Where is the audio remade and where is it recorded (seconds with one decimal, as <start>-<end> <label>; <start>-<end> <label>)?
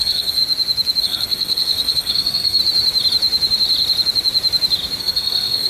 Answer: 0.0-0.4 remade; 0.4-1.0 recorded; 1.0-2.6 remade; 2.6-5.0 recorded; 5.0-5.7 remade